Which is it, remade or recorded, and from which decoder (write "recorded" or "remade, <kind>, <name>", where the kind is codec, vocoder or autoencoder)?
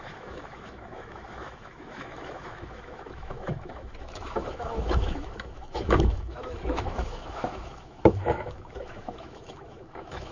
remade, autoencoder, DAC-VAE